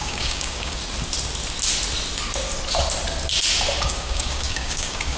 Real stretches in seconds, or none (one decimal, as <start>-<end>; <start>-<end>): 0.8-3.8